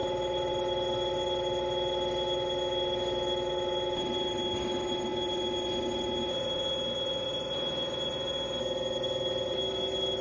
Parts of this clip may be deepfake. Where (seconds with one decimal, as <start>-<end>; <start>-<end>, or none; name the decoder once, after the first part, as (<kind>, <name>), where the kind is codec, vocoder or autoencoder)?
none